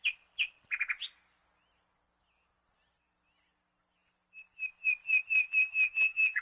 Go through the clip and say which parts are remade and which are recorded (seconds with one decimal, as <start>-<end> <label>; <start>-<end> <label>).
0.0-5.4 recorded; 5.4-6.4 remade